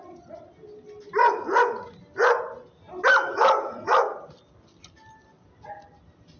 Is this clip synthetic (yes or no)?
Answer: no